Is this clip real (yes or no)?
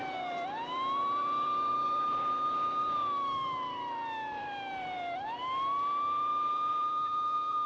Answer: no